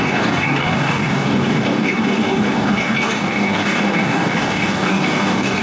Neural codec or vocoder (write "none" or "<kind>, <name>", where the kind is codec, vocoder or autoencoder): codec, DAC